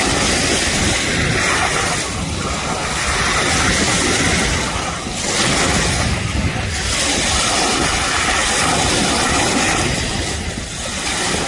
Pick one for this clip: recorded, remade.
recorded